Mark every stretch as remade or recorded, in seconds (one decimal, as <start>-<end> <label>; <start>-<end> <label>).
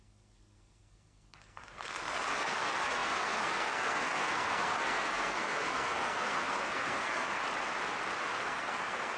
0.0-7.4 remade; 7.4-8.2 recorded; 8.2-9.2 remade